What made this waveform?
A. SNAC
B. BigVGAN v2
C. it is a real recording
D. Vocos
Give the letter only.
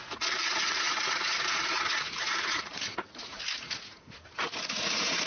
D